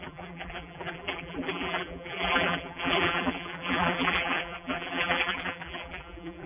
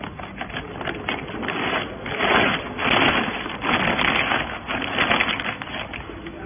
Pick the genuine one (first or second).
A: second